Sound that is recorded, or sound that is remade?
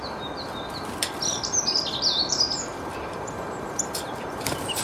remade